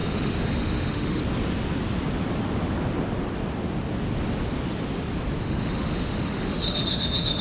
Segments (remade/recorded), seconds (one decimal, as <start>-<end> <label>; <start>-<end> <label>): 0.0-1.2 remade; 1.2-5.4 recorded; 5.4-7.4 remade